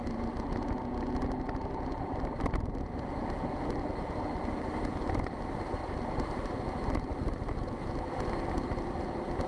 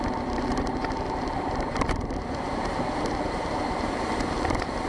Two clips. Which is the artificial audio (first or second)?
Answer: second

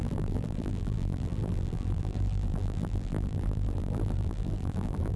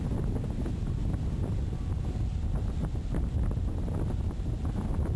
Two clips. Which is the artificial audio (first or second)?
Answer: first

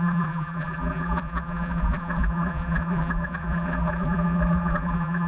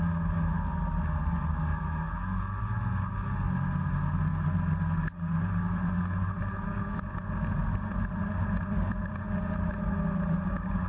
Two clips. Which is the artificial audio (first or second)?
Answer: first